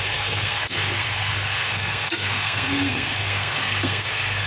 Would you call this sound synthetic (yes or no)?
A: yes